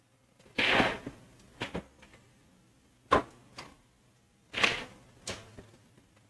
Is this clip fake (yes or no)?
no